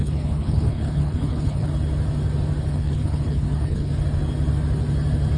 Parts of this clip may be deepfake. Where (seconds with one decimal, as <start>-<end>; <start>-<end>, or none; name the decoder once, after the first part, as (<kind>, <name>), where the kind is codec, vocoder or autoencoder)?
0.0-1.7 (codec, HILCodec); 2.7-3.9